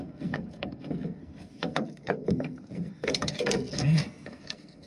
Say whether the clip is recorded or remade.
remade